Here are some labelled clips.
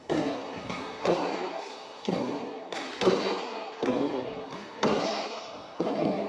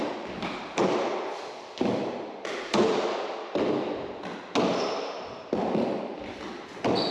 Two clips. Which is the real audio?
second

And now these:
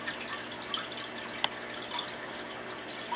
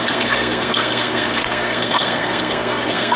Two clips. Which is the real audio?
first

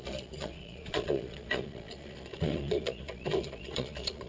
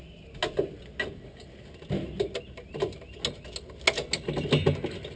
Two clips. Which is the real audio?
second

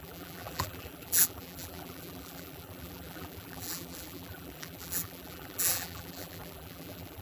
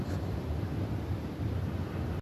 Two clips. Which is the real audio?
second